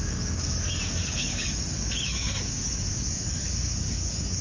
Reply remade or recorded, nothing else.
remade